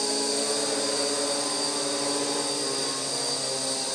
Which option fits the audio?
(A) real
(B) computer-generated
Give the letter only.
A